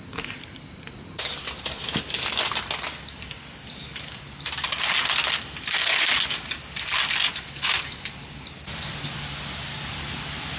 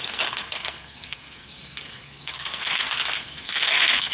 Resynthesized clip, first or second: second